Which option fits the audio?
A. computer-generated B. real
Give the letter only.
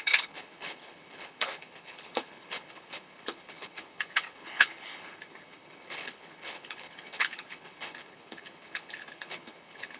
A